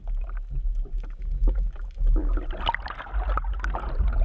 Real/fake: real